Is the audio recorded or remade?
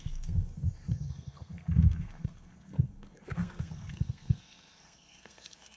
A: remade